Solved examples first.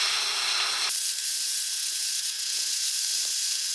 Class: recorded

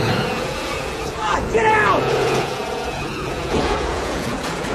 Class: remade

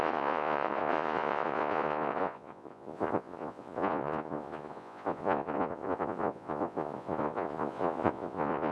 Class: remade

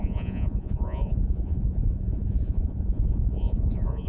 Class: remade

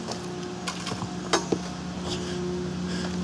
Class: recorded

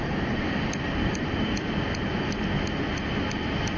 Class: recorded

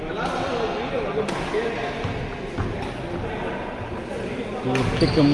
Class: recorded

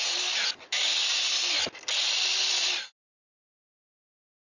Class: recorded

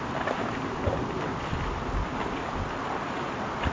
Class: recorded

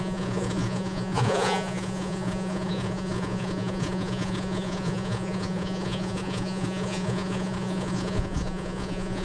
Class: remade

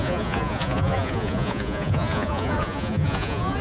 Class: remade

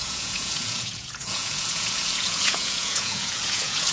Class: remade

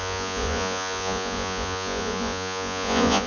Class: remade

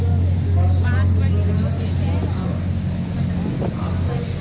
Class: recorded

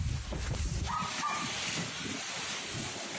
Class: recorded